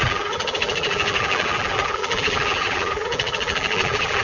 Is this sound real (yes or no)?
no